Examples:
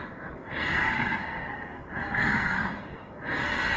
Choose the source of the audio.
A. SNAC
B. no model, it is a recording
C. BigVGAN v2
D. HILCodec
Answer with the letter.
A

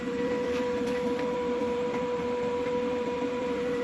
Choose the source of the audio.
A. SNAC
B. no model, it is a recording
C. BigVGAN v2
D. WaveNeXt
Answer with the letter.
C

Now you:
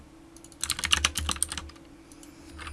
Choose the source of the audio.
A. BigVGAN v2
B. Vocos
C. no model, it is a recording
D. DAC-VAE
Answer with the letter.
C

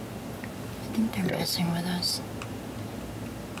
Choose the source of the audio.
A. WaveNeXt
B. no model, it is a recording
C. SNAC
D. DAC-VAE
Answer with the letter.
B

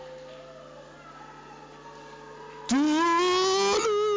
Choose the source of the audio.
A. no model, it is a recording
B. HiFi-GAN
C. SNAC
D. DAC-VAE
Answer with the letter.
A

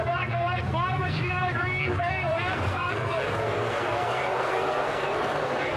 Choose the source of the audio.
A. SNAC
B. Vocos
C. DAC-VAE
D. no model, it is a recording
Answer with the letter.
A